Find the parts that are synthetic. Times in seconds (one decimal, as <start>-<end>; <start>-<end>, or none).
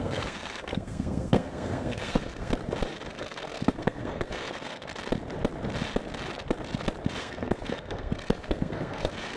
0.0-2.5; 3.1-4.9; 7.2-9.4